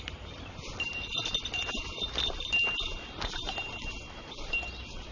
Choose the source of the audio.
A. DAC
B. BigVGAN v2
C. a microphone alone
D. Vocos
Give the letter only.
C